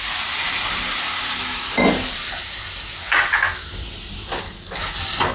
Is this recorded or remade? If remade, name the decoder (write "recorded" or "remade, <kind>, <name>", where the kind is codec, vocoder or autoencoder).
recorded